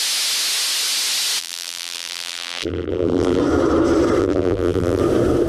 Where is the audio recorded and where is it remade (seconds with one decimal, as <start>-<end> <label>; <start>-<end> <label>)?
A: 0.0-1.4 recorded; 1.4-3.4 remade; 3.4-4.2 recorded; 4.2-5.0 remade; 5.0-5.5 recorded